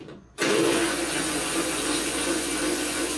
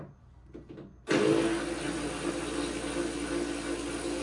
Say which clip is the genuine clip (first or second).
second